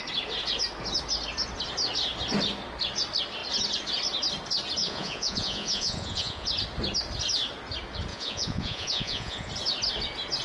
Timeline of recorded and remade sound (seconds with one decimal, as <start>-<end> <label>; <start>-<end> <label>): 0.0-4.8 recorded; 4.8-6.5 remade; 6.5-8.1 recorded; 8.1-9.5 remade; 9.5-10.4 recorded